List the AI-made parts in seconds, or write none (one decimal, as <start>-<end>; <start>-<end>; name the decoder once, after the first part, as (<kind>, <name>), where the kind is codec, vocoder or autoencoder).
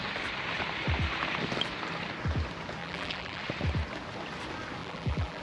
2.8-3.4 (vocoder, BigVGAN v2); 4.8-5.4